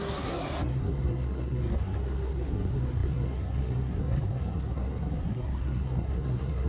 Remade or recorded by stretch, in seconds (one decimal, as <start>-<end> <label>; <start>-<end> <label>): 0.0-6.7 remade